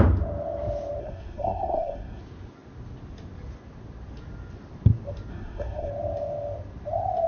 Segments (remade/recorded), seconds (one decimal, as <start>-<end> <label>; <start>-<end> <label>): 0.0-1.0 recorded; 1.0-2.2 remade; 2.2-5.3 recorded; 5.3-5.9 remade; 5.9-7.3 recorded